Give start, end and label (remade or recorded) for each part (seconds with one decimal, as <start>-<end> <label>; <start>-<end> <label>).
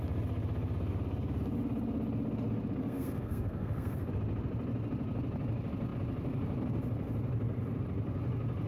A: 0.0-2.8 recorded; 2.8-4.1 remade; 4.1-8.7 recorded